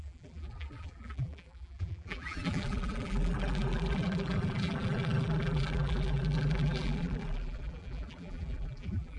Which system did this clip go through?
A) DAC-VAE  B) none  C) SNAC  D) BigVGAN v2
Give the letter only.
D